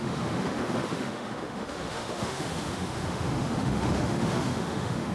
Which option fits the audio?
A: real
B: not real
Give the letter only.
B